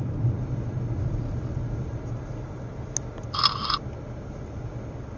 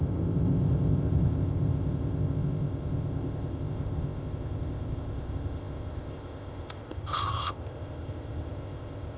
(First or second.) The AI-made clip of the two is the second